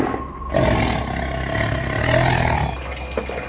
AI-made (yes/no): no